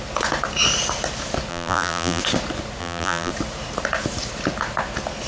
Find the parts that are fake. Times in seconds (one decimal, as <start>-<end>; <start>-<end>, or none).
1.5-2.2; 2.8-3.3